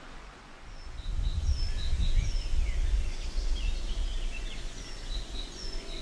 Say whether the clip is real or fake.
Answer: fake